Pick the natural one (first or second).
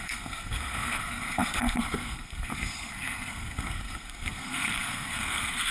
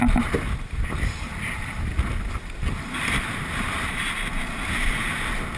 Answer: second